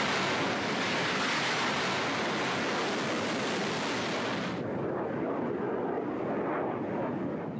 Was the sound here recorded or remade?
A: recorded